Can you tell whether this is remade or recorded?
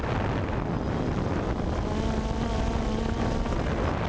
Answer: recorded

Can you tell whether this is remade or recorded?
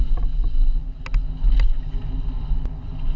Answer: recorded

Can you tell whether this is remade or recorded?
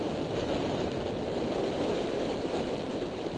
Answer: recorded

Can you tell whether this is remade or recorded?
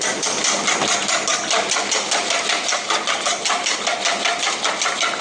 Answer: recorded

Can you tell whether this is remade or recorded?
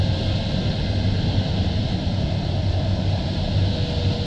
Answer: recorded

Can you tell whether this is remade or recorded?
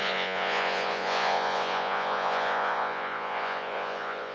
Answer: remade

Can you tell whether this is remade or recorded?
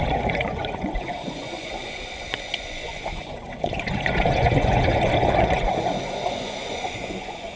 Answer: remade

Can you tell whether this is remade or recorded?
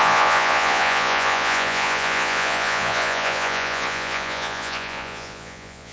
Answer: remade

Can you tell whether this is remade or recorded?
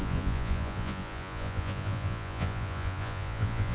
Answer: remade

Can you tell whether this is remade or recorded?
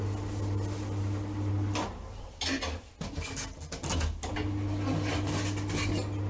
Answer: recorded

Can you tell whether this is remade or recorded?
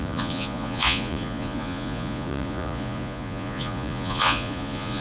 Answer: remade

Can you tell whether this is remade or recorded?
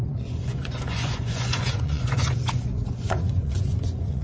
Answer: remade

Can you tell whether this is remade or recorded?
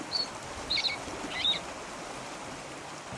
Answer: recorded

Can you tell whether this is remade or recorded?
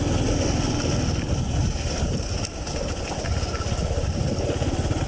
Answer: recorded